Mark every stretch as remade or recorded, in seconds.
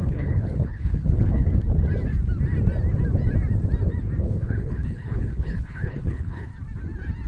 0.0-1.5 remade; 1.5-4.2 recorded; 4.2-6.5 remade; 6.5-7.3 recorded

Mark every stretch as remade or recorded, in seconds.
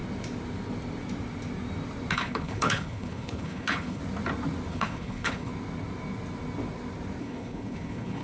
0.0-2.1 recorded; 2.1-4.0 remade; 4.0-4.7 recorded; 4.7-5.5 remade; 5.5-7.2 recorded; 7.2-8.2 remade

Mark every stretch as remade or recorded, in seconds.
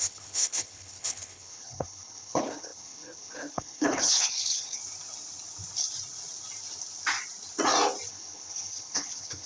0.0-4.8 remade; 4.8-8.1 recorded; 8.1-9.5 remade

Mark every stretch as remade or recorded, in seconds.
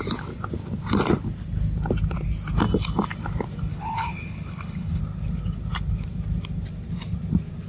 0.0-3.7 recorded; 3.7-5.0 remade; 5.0-7.7 recorded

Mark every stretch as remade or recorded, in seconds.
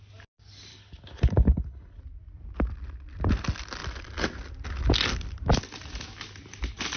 0.0-0.7 recorded; 0.7-2.0 remade; 2.0-7.0 recorded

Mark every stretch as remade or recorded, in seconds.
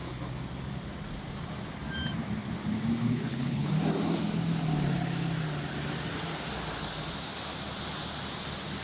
0.0-3.1 recorded; 3.1-3.7 remade; 3.7-8.8 recorded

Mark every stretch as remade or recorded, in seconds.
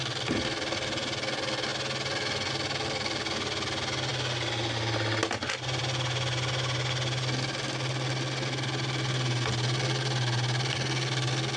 0.0-11.6 recorded